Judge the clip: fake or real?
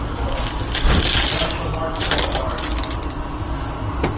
real